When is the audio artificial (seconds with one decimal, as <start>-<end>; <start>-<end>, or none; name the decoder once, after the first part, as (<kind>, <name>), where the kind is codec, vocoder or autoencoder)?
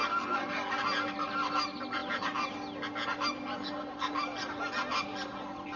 none